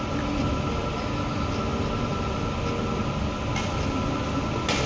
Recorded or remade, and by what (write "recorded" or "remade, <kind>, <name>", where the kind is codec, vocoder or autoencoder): recorded